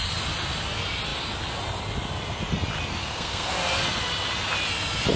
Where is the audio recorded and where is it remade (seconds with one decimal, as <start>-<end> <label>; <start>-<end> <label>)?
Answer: 0.0-3.0 recorded; 3.0-3.5 remade; 3.5-5.2 recorded